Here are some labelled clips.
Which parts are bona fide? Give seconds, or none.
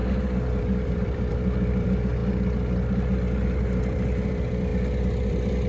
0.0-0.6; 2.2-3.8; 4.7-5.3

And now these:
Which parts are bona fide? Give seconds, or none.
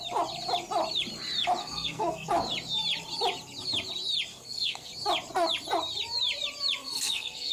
0.0-1.6; 2.3-4.3; 4.9-6.8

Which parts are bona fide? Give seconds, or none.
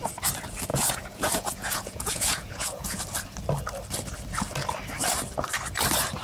0.0-0.7; 3.0-6.2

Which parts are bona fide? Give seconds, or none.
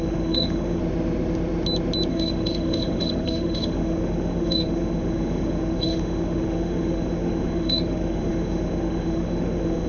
0.8-2.1